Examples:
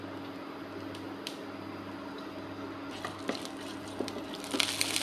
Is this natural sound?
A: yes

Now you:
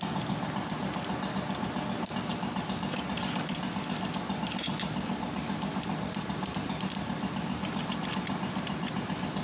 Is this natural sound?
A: yes